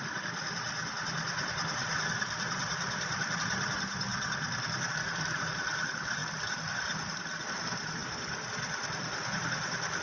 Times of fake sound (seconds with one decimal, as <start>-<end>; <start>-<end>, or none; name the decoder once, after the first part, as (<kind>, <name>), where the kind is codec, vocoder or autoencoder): 1.8-3.4 (vocoder, BigVGAN v2)